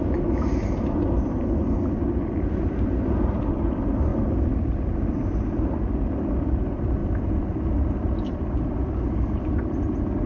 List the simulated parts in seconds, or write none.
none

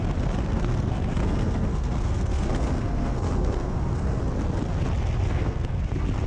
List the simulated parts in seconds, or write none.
0.4-4.2 (codec, SNAC); 5.3-5.8

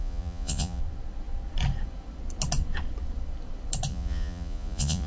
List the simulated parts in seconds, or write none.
0.0-0.8 (vocoder, Vocos); 3.9-5.1

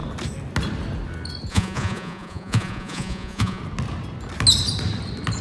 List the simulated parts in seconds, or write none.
1.5-3.6 (vocoder, Vocos)

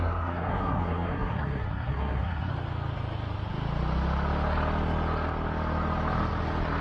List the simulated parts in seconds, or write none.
0.0-2.5 (codec, SNAC)

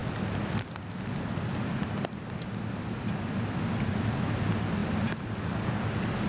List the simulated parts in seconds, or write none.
none

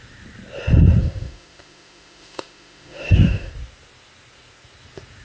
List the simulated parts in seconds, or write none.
1.0-3.5 (autoencoder, DAC-VAE)

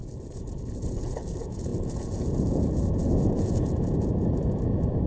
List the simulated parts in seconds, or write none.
0.0-5.1 (vocoder, Vocos)